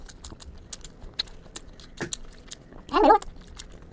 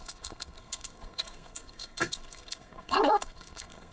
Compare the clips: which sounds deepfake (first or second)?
second